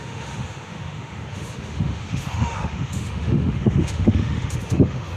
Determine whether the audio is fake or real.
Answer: fake